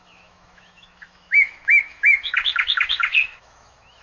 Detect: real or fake fake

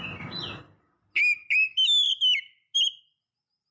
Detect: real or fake real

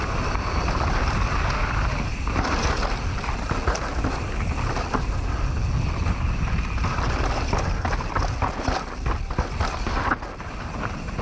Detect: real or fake real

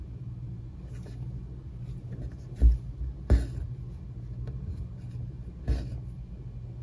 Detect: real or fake real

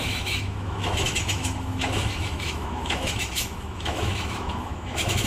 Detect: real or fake fake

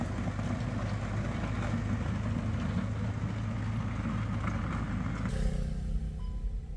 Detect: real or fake real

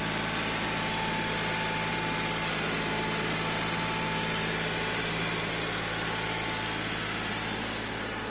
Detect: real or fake real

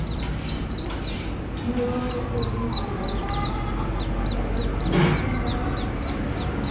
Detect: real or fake real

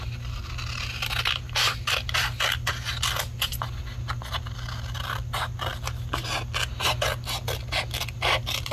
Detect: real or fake real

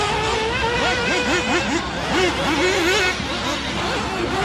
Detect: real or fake real